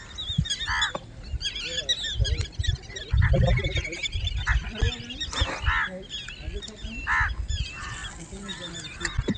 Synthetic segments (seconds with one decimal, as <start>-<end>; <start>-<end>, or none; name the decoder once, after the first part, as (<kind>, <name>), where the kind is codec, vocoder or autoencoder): none